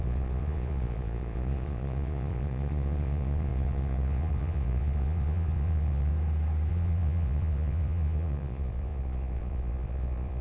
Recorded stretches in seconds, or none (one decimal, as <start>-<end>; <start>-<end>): 6.1-6.7